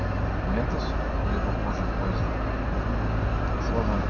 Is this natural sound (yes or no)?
yes